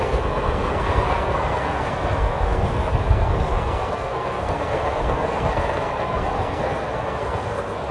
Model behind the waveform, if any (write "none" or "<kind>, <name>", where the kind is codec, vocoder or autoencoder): codec, SNAC